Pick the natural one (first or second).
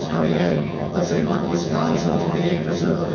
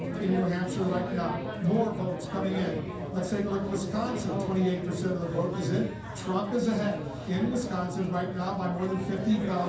second